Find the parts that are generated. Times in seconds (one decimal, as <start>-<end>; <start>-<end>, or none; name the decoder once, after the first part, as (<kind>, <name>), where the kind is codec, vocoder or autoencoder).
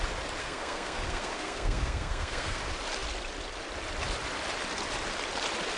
0.4-2.6 (codec, SNAC)